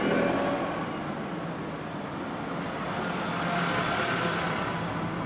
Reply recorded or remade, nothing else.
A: recorded